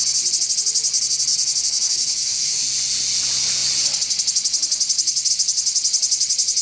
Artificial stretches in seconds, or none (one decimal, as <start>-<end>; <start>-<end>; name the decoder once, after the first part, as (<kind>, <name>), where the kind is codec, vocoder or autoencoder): 1.3-2.6 (autoencoder, DAC-VAE)